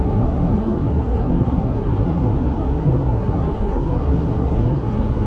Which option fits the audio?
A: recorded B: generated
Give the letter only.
B